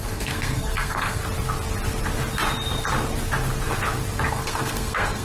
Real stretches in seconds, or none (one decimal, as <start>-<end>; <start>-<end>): 1.2-4.3